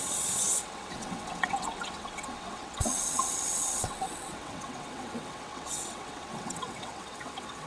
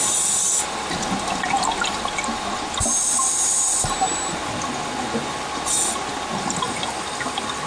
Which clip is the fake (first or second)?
first